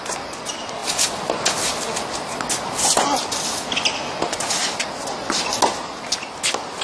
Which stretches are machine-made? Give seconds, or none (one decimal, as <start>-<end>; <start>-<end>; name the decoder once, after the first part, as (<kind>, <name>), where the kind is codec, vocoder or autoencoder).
none